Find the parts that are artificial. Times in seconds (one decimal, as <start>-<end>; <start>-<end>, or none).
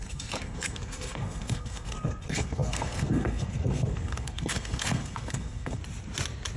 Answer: 0.0-5.8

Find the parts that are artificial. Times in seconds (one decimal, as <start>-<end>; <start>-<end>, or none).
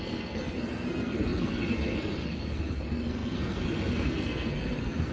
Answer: 0.0-5.1